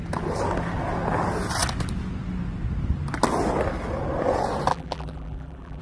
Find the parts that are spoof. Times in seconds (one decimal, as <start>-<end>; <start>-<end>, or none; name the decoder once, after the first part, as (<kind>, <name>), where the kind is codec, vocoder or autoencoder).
4.7-5.8 (vocoder, BigVGAN v2)